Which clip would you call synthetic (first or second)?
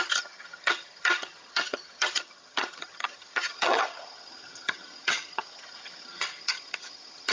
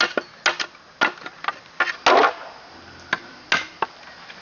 first